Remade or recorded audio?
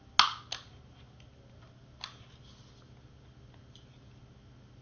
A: recorded